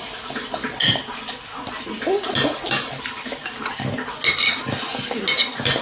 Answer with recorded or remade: recorded